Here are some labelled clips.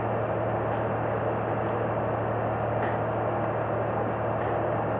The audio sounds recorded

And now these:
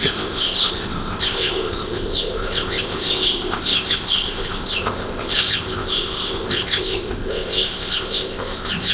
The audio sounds remade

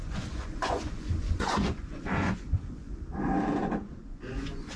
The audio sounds remade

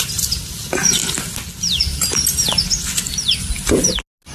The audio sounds recorded